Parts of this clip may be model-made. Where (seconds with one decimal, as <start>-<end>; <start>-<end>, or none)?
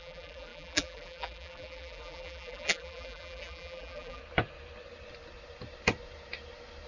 0.0-4.2